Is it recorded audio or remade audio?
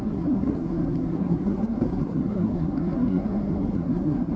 remade